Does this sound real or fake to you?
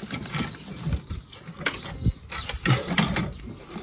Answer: real